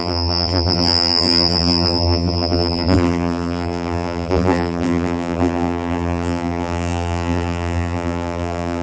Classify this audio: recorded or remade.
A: remade